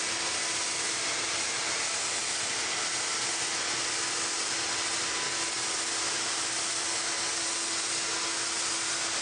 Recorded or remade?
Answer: recorded